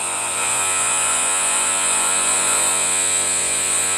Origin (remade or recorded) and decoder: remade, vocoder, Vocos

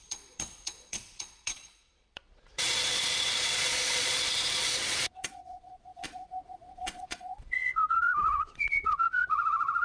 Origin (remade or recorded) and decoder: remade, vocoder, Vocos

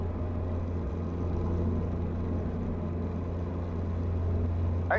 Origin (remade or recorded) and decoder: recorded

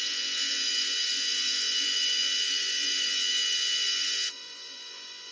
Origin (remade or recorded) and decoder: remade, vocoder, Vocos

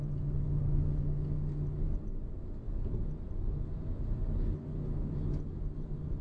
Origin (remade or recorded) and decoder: recorded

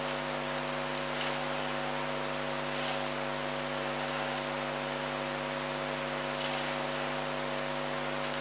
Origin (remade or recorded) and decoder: recorded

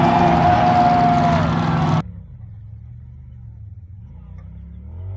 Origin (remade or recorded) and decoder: recorded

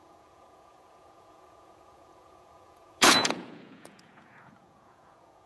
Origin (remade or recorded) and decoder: remade, vocoder, Vocos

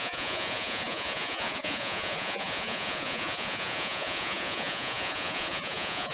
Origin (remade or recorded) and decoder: remade, vocoder, Vocos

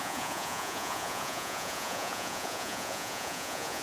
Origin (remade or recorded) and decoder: remade, vocoder, Vocos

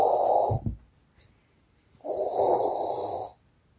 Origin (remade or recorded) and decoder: recorded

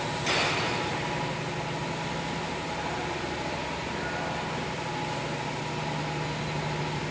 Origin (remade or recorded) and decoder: recorded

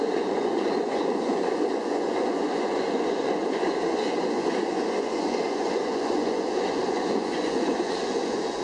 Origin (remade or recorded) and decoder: remade, vocoder, Vocos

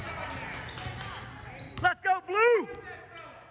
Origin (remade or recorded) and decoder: recorded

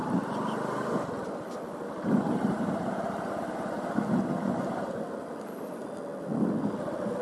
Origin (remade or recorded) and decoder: recorded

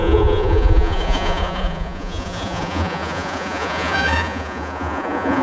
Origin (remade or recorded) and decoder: remade, vocoder, Vocos